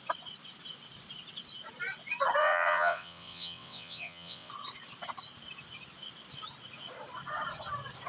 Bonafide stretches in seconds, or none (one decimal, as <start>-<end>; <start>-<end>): 0.0-2.4; 4.5-8.1